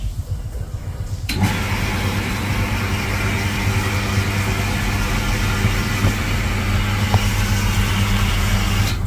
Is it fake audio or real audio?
real